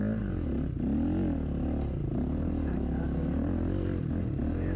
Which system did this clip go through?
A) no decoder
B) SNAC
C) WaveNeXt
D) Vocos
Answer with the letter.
A